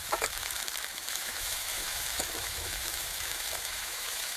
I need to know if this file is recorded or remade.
remade